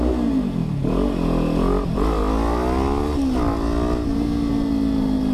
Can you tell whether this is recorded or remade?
recorded